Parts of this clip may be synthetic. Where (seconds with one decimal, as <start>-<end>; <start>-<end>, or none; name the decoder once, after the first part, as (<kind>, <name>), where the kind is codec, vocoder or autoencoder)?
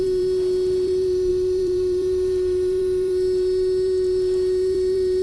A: 0.0-5.2 (vocoder, BigVGAN v2)